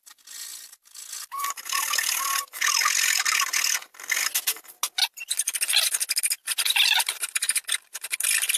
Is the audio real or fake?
real